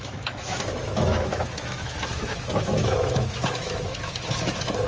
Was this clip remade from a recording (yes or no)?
yes